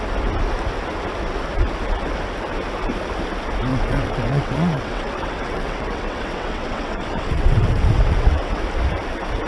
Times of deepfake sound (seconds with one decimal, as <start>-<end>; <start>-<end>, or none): 3.7-8.6

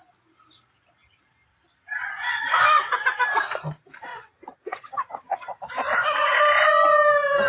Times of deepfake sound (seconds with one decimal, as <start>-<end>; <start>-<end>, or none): 4.1-5.6

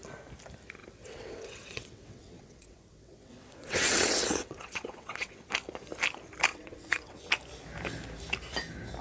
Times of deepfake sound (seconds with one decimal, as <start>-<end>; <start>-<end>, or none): 0.8-5.5; 6.5-7.3

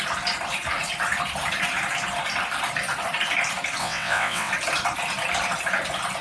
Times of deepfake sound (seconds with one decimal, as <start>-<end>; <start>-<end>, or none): 3.8-4.5